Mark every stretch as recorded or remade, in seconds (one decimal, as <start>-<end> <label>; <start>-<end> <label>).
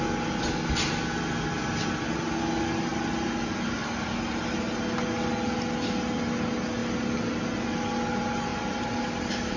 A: 0.0-8.5 recorded; 8.5-9.6 remade